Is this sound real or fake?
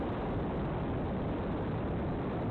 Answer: real